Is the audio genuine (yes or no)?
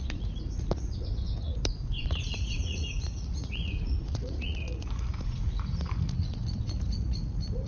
no